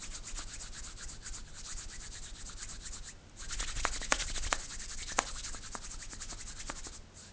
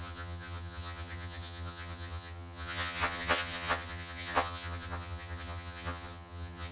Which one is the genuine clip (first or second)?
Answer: first